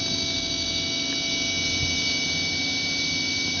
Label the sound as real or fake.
real